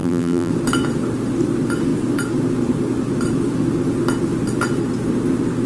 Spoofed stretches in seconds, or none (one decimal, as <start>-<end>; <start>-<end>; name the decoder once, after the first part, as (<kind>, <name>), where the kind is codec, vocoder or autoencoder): 0.0-0.5 (vocoder, BigVGAN v2)